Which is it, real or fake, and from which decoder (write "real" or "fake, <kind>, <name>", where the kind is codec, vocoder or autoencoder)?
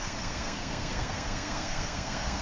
fake, codec, SNAC